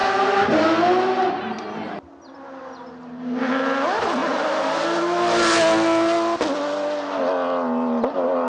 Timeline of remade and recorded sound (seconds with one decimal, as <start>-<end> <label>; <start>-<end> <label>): 0.0-8.5 recorded